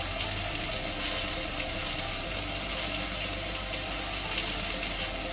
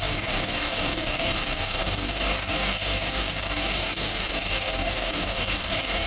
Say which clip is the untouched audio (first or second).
first